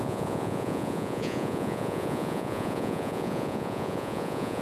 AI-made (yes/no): yes